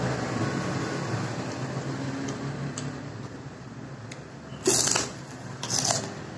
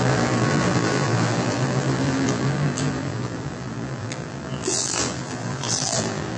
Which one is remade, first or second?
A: second